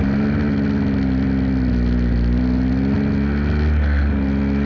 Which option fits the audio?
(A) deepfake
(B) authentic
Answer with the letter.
B